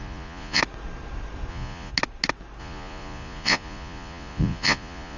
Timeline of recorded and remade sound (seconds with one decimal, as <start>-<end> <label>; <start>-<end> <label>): 0.0-0.6 remade; 0.6-1.5 recorded; 1.5-1.9 remade; 1.9-2.6 recorded; 2.6-5.2 remade